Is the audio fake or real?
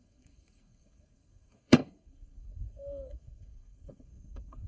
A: fake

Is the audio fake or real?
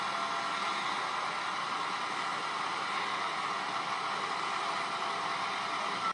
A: real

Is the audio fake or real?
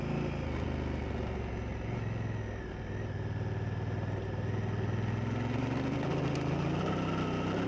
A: real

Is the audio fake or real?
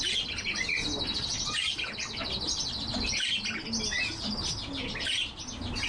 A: real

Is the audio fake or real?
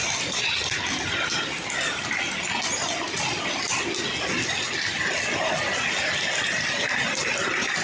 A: real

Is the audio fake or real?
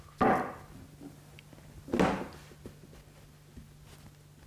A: real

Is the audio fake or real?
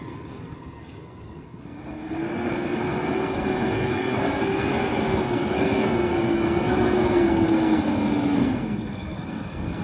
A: fake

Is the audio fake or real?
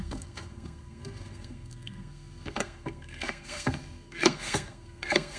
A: fake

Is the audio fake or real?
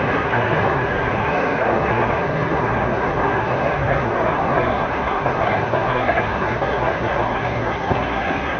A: fake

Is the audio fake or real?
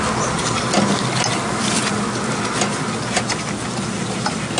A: real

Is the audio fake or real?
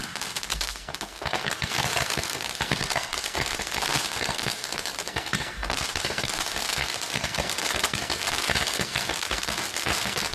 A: fake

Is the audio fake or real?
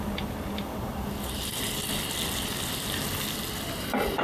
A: real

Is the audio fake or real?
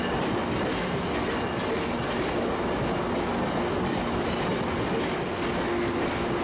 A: real